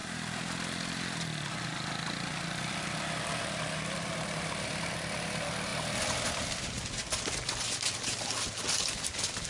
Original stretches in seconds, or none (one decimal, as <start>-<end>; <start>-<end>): 0.0-9.5